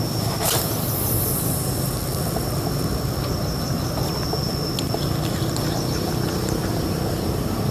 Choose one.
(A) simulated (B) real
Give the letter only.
B